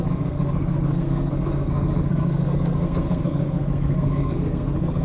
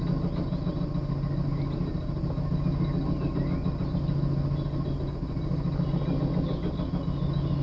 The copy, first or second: first